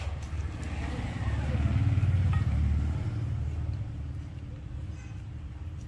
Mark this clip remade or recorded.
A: recorded